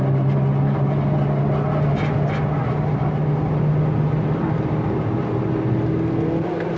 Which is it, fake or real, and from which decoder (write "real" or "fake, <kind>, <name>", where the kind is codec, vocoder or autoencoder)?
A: real